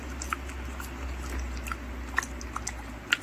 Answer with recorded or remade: recorded